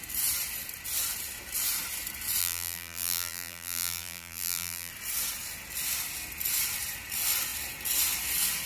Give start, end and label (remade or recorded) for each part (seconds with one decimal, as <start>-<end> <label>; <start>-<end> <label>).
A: 0.0-2.4 recorded; 2.4-4.9 remade; 4.9-8.7 recorded